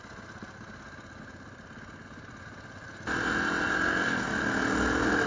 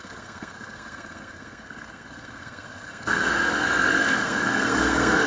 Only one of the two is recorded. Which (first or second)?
first